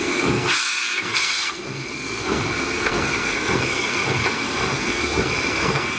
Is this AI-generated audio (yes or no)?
yes